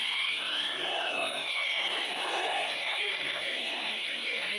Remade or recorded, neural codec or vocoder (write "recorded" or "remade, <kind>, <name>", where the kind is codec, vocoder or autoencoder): remade, codec, SNAC